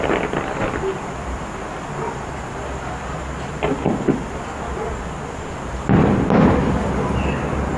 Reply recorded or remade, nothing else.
recorded